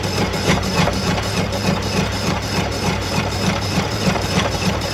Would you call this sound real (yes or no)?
no